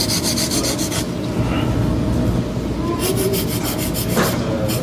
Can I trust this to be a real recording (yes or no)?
yes